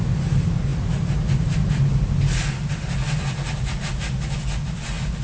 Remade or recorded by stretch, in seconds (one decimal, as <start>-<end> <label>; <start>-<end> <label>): 0.0-5.2 recorded